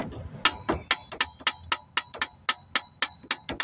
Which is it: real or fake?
real